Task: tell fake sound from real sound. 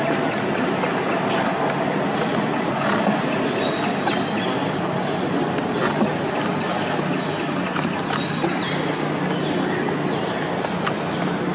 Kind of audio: real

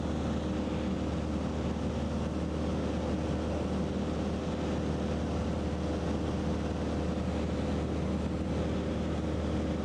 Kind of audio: real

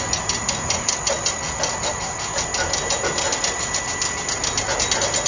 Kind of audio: real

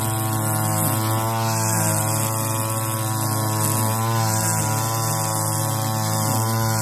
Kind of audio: real